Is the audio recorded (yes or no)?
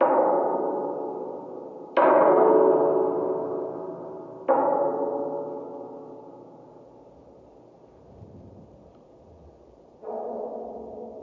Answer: yes